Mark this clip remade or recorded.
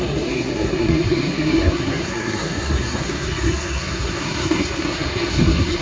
remade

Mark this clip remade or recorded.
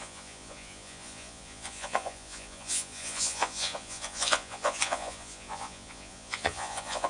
remade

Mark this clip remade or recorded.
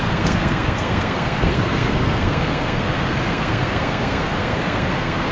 remade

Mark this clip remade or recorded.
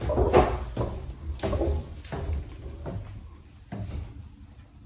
recorded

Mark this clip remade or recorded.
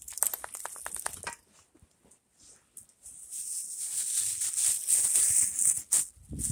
recorded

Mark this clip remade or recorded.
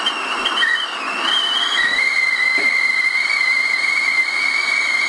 remade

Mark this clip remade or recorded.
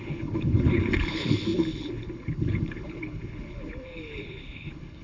remade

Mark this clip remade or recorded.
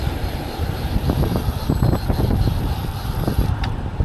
remade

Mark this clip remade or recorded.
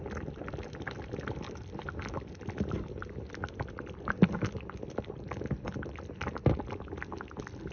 recorded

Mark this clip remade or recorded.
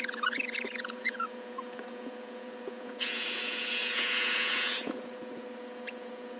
remade